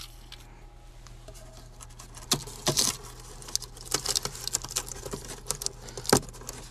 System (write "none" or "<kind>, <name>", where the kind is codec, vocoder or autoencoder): none